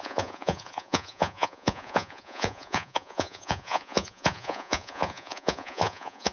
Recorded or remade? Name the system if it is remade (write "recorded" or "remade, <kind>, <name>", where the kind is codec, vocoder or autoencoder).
remade, vocoder, Vocos